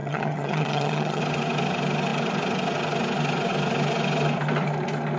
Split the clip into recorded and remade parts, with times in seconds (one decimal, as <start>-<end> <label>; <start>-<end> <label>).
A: 0.0-1.2 remade; 1.2-5.2 recorded